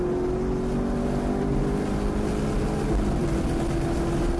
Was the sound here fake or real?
real